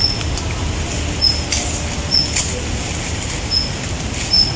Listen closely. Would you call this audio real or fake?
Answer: real